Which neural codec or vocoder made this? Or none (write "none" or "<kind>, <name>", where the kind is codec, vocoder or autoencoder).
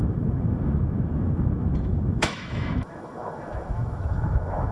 autoencoder, DAC-VAE